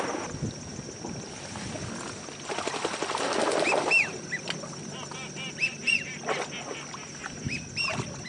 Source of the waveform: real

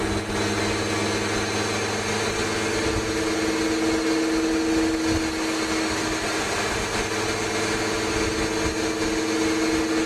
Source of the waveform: real